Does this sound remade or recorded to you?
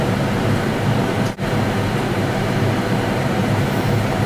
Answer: remade